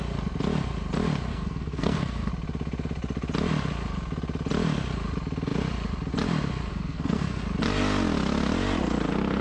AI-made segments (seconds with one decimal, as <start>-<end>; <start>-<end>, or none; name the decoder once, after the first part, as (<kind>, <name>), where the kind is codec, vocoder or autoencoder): 1.3-2.3 (codec, SNAC); 6.7-7.4